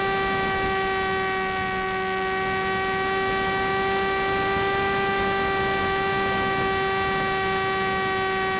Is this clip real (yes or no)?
yes